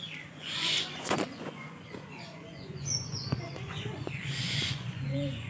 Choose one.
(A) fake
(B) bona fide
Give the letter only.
A